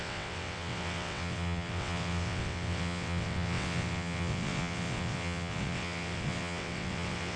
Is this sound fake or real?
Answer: fake